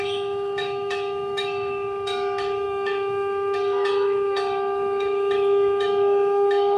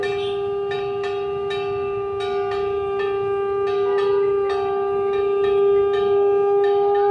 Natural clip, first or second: second